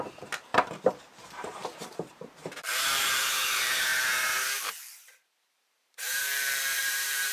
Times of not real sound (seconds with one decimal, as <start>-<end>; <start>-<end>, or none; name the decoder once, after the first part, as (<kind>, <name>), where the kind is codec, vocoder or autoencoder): 0.0-2.4 (vocoder, BigVGAN v2); 2.9-3.9; 4.9-7.3